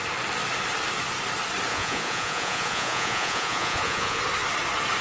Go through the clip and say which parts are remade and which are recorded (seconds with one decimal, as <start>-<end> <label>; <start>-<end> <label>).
0.0-1.7 recorded; 1.7-4.2 remade; 4.2-5.0 recorded